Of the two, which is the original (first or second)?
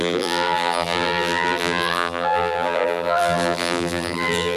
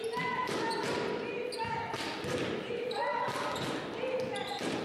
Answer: second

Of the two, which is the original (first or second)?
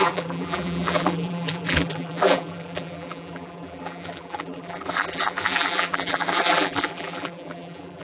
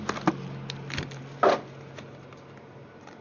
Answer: second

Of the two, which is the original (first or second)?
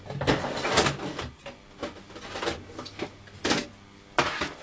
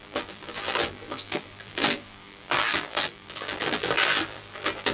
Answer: first